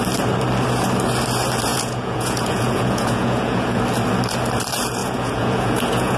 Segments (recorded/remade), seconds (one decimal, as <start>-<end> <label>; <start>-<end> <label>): 0.0-1.7 recorded; 1.7-3.8 remade; 3.8-5.0 recorded; 5.0-6.2 remade